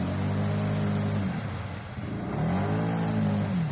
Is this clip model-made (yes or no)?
no